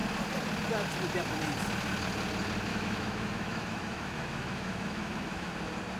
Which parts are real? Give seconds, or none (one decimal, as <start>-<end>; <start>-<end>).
0.0-2.7; 5.5-6.0